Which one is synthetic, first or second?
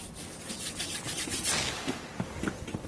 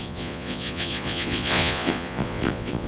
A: second